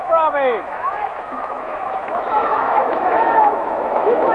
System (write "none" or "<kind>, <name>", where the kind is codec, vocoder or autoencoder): autoencoder, DAC-VAE